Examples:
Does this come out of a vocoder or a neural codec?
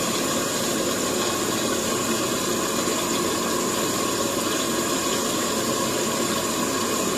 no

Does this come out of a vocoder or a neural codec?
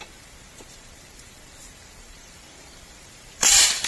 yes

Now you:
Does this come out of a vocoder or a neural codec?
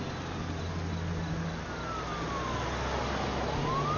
no